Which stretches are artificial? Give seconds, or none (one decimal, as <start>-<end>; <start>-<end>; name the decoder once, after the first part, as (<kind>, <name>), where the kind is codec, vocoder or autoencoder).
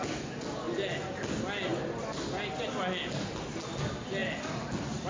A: none